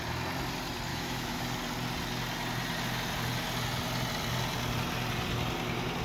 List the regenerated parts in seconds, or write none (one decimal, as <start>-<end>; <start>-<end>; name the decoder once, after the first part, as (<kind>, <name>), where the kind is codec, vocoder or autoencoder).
0.9-1.4 (autoencoder, DAC-VAE)